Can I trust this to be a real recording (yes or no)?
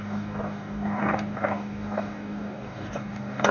no